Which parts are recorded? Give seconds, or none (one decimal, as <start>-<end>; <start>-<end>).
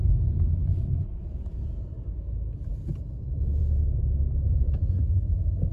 0.0-5.7